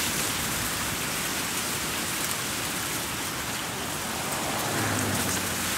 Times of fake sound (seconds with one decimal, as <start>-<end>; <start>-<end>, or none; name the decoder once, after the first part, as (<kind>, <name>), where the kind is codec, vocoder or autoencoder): none